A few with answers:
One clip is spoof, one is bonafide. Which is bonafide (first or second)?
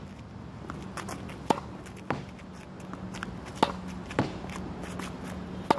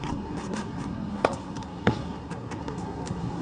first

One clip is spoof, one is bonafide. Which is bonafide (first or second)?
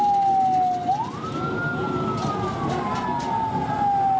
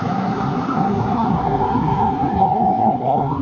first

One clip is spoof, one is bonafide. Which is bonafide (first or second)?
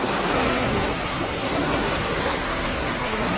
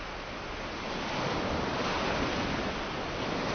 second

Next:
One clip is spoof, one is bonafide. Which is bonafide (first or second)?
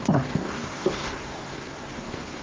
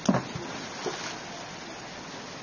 second